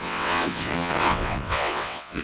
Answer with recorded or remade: remade